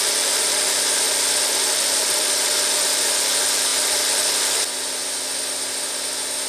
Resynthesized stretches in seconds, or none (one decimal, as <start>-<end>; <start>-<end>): none